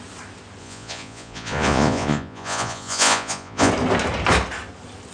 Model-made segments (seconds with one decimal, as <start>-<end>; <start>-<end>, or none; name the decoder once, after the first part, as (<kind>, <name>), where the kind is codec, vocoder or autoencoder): 0.6-3.7 (vocoder, Vocos)